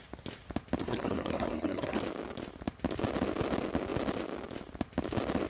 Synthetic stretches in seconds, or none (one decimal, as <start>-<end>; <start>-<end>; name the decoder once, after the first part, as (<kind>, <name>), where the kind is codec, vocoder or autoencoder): 0.8-2.0 (codec, SNAC)

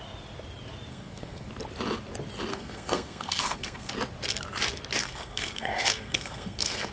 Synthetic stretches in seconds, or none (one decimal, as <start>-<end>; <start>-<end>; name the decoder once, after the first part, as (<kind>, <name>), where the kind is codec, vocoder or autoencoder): 0.9-1.5 (codec, SNAC); 2.5-3.9; 5.0-6.9

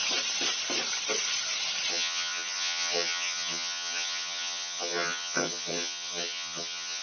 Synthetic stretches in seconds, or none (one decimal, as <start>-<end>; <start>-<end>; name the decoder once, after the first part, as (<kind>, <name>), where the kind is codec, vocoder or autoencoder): 1.9-7.0 (vocoder, HiFi-GAN)

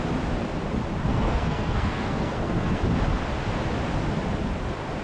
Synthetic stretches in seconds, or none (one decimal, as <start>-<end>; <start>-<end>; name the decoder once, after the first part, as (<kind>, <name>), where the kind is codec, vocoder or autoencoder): 1.1-2.8 (codec, SNAC)

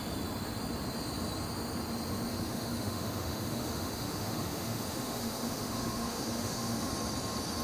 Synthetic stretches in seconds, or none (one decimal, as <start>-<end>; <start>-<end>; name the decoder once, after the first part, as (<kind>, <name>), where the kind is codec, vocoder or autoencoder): 2.3-6.9 (autoencoder, DAC-VAE)

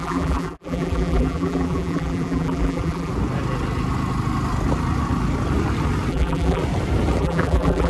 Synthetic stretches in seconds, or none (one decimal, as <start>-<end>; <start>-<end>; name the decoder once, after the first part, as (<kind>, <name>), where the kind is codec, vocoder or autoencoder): 0.0-3.1 (vocoder, BigVGAN v2); 6.1-6.6; 7.2-7.9

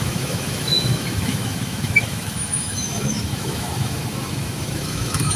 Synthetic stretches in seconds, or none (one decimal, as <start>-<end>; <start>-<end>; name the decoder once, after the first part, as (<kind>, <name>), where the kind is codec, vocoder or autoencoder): 0.0-5.4 (autoencoder, DAC-VAE)

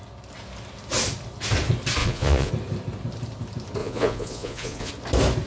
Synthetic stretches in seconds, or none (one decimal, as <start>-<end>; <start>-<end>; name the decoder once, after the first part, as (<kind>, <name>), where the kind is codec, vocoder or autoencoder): 2.0-2.5 (vocoder, Vocos); 3.8-4.9